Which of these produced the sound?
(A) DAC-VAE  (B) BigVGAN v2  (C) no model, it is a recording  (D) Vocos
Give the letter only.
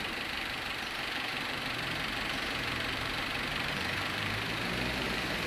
B